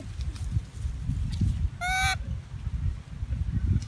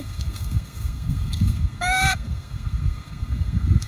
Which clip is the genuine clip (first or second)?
first